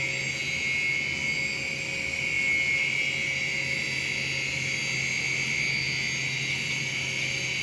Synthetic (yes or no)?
no